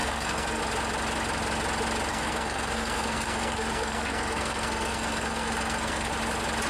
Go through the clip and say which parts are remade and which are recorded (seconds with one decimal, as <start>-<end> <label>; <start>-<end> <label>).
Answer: 0.0-0.6 remade; 0.6-2.1 recorded; 2.1-6.1 remade; 6.1-6.7 recorded